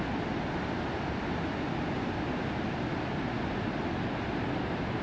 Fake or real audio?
real